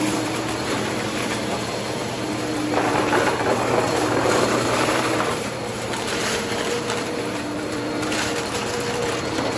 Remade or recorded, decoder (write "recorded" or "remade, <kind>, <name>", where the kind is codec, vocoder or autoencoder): remade, vocoder, BigVGAN v2